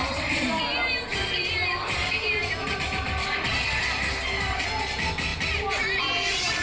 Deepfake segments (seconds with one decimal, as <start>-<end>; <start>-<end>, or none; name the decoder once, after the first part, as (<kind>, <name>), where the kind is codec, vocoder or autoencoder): 0.0-0.6 (vocoder, BigVGAN v2); 1.1-3.5